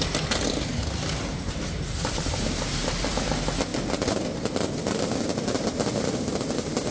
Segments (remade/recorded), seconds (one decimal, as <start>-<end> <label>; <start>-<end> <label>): 0.0-0.7 recorded; 0.7-3.3 remade; 3.3-6.9 recorded